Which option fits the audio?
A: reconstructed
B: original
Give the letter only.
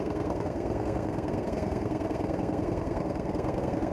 A